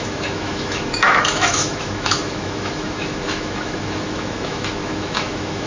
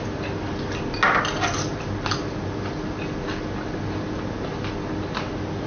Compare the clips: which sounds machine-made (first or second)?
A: first